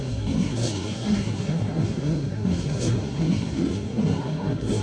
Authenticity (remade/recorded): remade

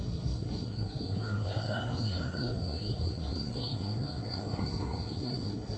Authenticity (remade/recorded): remade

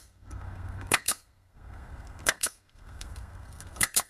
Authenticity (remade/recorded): remade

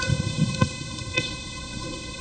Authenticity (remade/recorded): remade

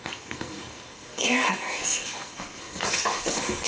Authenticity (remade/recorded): remade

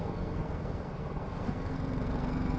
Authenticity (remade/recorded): remade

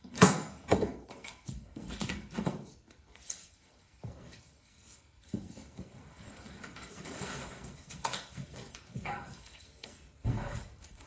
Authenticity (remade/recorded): remade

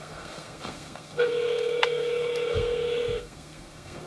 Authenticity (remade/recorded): remade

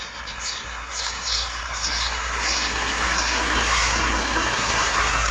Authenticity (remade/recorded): remade